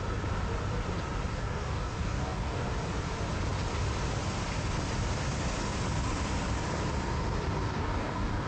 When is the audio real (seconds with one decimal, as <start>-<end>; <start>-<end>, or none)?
0.0-1.3; 2.7-7.6